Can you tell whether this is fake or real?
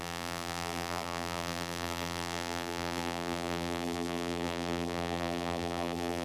fake